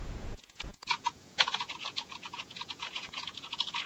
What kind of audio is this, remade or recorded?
remade